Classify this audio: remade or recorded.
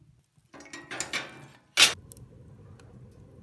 recorded